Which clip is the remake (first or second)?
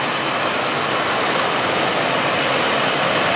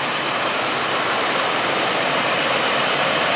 second